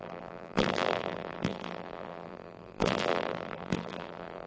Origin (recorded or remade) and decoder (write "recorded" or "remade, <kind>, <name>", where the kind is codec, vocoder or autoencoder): remade, vocoder, BigVGAN v2